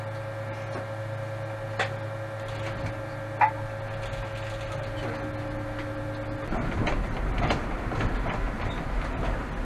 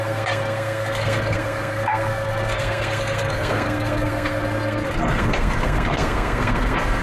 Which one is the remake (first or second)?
second